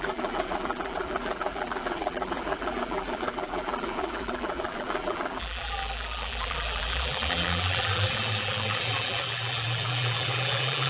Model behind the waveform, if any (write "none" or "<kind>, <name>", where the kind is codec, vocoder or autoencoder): vocoder, BigVGAN v2